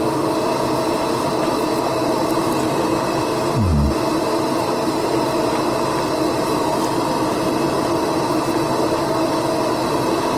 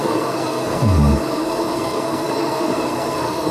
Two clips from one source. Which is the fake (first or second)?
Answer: second